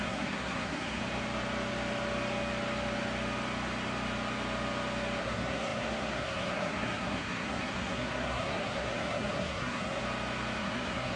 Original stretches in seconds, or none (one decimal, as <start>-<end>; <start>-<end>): 1.0-5.2; 10.0-10.6